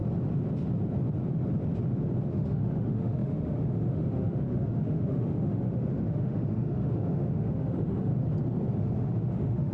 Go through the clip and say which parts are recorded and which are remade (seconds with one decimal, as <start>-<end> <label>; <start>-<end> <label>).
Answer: 0.0-2.3 recorded; 2.3-8.1 remade; 8.1-8.8 recorded; 8.8-9.7 remade